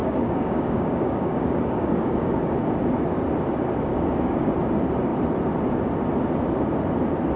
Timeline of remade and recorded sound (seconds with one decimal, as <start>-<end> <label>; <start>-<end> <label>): 0.0-2.3 remade; 2.3-3.9 recorded; 3.9-4.5 remade; 4.5-7.4 recorded